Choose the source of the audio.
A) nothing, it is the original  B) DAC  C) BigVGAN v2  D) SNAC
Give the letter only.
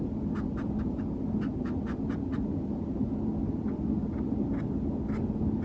A